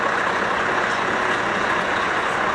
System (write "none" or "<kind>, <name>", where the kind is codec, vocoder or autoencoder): vocoder, Vocos